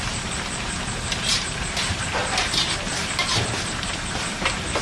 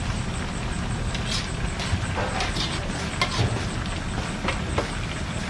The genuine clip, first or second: second